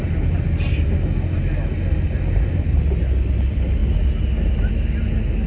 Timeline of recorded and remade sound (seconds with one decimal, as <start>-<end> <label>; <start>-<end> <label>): 0.0-5.5 recorded

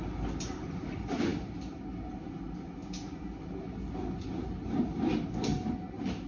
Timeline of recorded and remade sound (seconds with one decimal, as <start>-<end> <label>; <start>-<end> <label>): 0.0-6.3 recorded

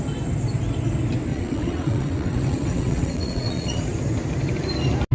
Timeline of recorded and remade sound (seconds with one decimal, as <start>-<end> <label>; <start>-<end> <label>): 0.0-1.3 recorded; 1.3-3.8 remade; 3.8-5.1 recorded

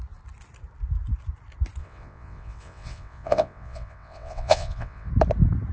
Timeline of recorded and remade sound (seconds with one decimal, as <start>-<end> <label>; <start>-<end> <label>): 0.0-1.8 recorded; 1.8-5.1 remade; 5.1-5.7 recorded

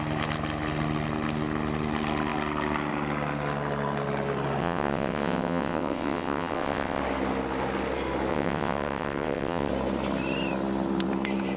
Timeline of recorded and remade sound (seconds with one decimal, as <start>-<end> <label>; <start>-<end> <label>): 0.0-4.6 recorded; 4.6-7.0 remade; 7.0-8.3 recorded; 8.3-9.7 remade; 9.7-11.6 recorded

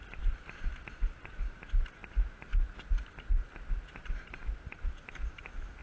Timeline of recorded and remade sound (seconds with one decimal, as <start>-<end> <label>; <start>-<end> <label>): 0.0-5.8 recorded

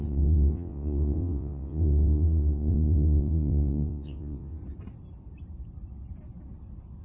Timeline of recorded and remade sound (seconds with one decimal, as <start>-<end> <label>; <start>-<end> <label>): 0.0-4.6 remade; 4.6-7.0 recorded